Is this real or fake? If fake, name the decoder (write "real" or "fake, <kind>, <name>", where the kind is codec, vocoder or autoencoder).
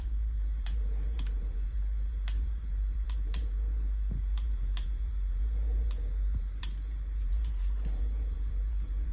fake, vocoder, BigVGAN v2